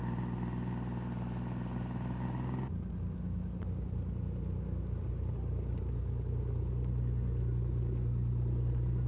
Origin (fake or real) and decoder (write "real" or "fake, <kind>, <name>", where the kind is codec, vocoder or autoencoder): real